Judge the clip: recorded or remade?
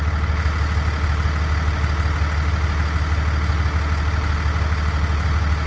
recorded